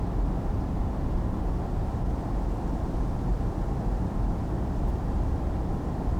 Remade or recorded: remade